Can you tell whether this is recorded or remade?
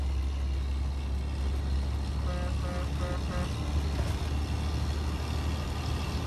recorded